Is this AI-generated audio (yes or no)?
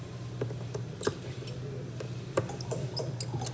no